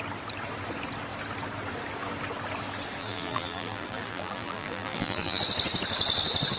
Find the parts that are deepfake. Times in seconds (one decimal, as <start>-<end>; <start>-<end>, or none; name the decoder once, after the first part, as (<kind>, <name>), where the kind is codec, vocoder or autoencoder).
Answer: 3.0-5.4 (vocoder, BigVGAN v2)

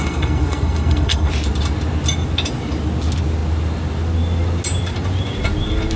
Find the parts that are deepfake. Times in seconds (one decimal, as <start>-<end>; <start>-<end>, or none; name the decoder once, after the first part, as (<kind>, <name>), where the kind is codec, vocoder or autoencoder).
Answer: 0.0-1.3 (codec, SNAC)

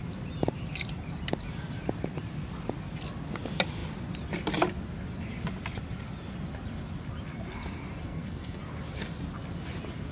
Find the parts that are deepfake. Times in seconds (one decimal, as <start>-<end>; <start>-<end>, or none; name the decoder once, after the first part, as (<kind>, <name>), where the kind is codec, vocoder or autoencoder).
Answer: 8.0-8.6 (codec, SNAC)

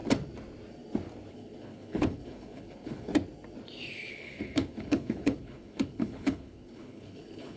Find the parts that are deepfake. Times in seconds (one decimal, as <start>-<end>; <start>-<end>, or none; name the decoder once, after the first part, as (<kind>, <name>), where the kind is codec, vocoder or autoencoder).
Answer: 1.3-3.1 (codec, HILCodec); 4.1-7.6

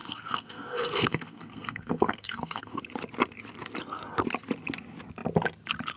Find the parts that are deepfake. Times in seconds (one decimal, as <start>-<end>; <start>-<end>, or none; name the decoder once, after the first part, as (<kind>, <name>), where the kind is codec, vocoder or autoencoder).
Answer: 0.0-2.8 (codec, SNAC)

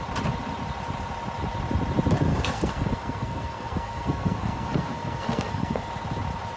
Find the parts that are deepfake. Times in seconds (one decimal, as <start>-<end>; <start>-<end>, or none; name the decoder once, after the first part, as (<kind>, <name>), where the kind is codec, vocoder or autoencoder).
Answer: 2.3-5.9 (codec, SNAC)